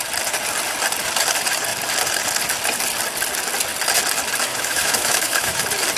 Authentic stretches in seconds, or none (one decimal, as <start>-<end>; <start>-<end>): 0.0-4.5; 5.6-6.0